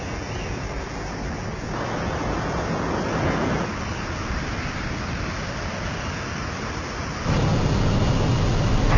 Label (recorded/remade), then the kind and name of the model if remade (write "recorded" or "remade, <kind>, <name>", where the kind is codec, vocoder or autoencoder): recorded